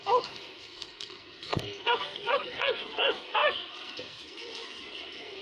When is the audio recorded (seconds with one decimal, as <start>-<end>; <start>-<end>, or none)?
none

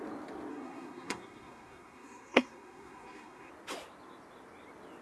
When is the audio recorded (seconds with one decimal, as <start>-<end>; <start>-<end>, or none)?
0.0-0.5; 3.5-5.0

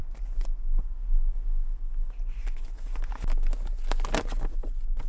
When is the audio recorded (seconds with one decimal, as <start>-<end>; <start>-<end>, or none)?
0.0-5.1

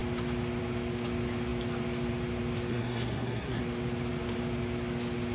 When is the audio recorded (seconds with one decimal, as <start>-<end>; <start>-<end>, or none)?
0.0-2.7; 3.6-5.3

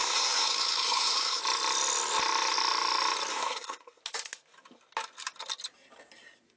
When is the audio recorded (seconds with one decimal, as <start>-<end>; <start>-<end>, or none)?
1.4-3.3; 4.0-6.6